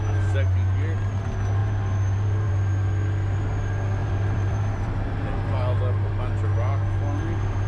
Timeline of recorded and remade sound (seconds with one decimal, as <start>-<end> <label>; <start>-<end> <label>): 0.0-1.6 recorded; 1.6-2.5 remade; 2.5-4.0 recorded; 4.0-4.9 remade; 4.9-7.7 recorded